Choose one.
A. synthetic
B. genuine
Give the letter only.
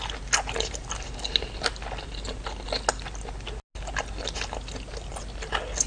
B